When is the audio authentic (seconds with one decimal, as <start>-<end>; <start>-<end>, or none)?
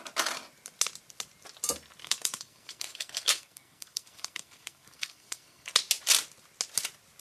0.0-2.0; 5.7-7.2